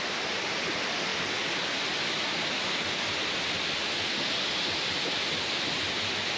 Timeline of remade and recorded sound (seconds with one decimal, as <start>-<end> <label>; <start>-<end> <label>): 0.0-6.4 recorded